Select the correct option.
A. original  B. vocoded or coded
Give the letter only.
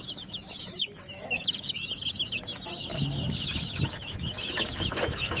B